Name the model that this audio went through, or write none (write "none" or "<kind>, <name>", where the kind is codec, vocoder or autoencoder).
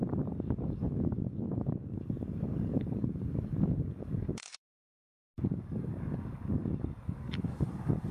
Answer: codec, DAC